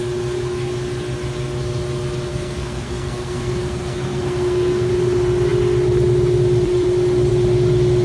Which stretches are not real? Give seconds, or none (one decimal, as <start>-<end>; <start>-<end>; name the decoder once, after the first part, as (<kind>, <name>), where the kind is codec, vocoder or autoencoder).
2.3-4.9 (codec, SNAC)